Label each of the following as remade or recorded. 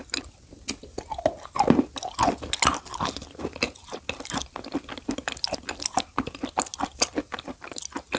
recorded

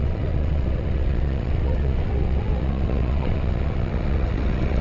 remade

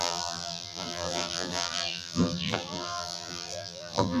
remade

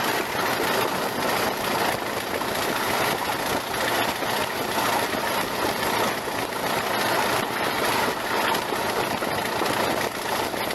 recorded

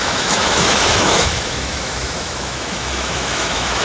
remade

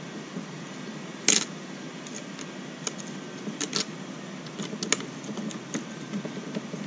recorded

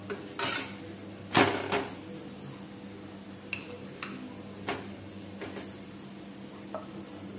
recorded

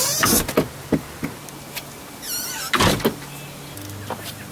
recorded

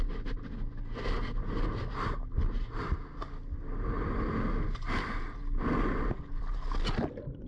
recorded